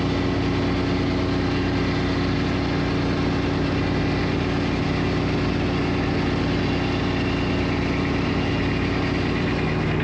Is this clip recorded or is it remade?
recorded